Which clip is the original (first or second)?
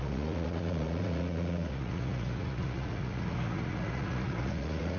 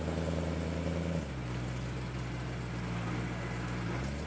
second